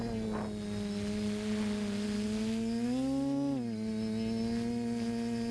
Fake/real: real